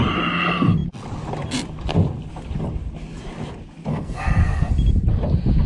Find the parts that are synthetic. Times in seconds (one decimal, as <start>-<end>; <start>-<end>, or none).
3.9-4.7